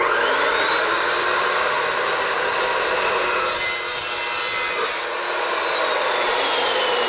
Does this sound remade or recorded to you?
recorded